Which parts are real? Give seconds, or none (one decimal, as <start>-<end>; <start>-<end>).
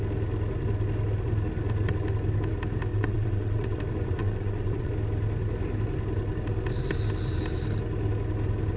0.0-2.9; 3.8-4.2; 4.9-8.8